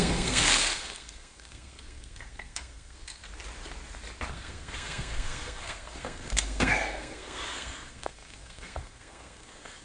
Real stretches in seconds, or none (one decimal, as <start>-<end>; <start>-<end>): 3.2-4.3